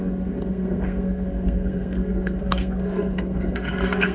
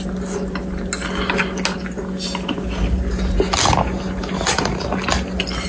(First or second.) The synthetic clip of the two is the first